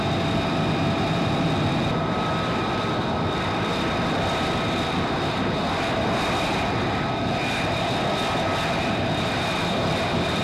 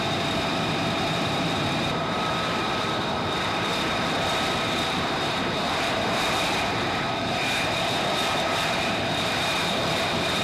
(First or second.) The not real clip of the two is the second